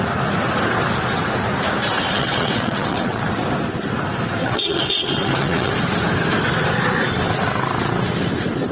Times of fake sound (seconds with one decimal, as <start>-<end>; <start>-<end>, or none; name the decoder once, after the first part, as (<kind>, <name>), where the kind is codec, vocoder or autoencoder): 2.1-3.2 (vocoder, WaveNeXt); 4.4-5.7